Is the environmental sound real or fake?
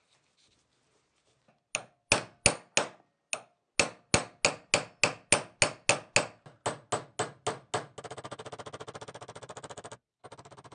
real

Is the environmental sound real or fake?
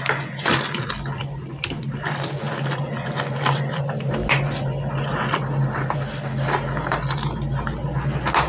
real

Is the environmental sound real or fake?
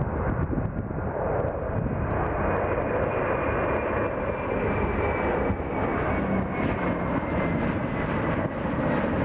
real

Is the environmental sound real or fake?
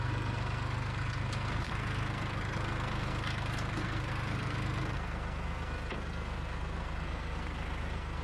fake